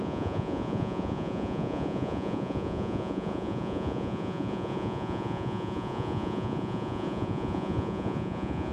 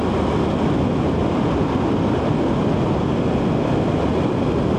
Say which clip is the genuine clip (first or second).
second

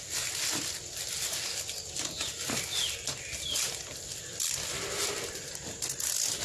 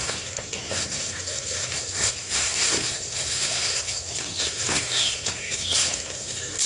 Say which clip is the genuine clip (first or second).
first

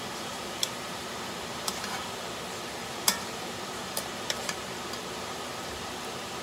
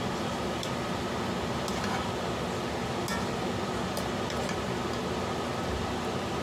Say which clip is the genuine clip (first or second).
second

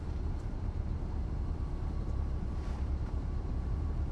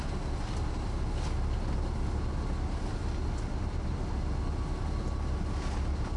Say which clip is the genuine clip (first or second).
second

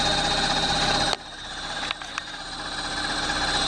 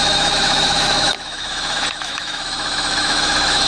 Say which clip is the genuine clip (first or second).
first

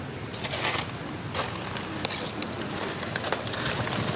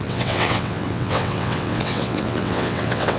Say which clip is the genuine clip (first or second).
first